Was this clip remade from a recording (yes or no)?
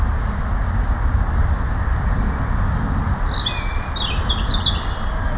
no